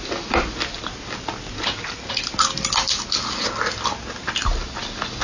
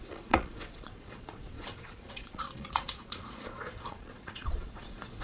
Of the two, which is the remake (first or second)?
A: second